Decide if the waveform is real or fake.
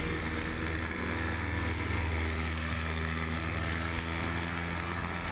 fake